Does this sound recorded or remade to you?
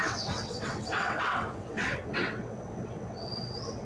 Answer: remade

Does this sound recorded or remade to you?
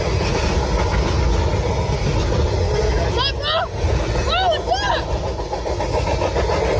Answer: recorded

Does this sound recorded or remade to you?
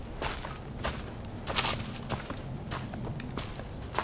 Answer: recorded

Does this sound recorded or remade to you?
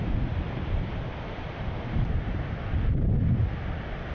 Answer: recorded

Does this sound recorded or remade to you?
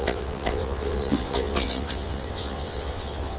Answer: remade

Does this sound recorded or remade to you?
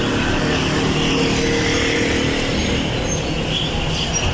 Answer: recorded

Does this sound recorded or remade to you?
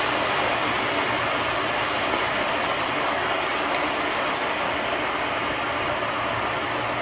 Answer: recorded